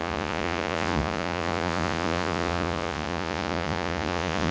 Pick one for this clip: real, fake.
fake